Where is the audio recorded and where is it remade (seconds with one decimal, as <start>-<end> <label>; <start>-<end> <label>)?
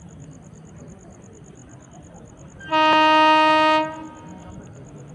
0.0-5.1 recorded